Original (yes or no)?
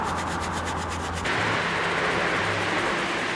yes